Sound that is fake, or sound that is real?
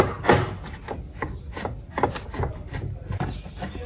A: real